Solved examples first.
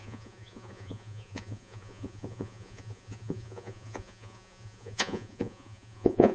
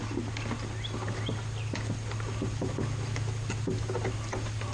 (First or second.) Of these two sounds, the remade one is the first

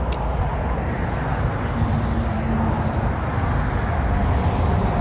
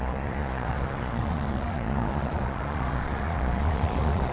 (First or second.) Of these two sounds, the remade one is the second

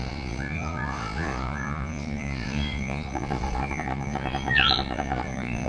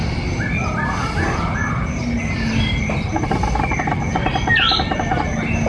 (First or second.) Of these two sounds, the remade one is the first